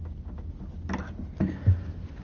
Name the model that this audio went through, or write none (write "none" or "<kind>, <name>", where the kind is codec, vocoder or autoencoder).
none